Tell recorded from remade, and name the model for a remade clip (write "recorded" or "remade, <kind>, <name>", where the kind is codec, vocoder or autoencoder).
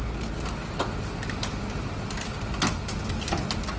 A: recorded